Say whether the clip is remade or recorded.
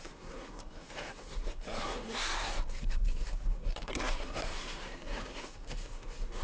remade